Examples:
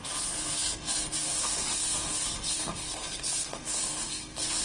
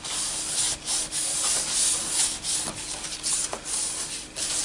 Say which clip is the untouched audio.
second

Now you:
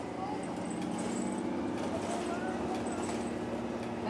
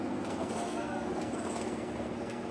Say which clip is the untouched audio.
first